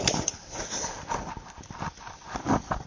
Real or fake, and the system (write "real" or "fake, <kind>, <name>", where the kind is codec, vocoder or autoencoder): real